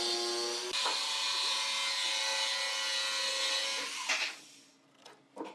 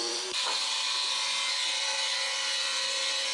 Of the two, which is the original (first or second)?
first